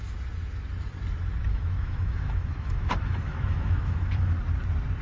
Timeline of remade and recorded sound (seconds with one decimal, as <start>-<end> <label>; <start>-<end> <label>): 0.0-1.5 recorded; 1.5-4.4 remade; 4.4-5.0 recorded

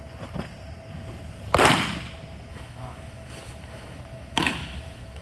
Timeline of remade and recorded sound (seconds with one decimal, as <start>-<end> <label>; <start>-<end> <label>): 0.0-2.5 recorded; 2.5-5.2 remade

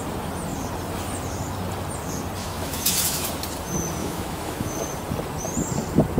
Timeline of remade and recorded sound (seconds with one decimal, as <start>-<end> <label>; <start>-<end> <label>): 0.0-2.4 recorded; 2.4-3.3 remade; 3.3-4.0 recorded; 4.0-4.7 remade; 4.7-6.2 recorded

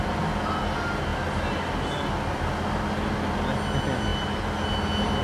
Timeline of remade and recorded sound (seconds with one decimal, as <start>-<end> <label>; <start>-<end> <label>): 0.0-5.2 recorded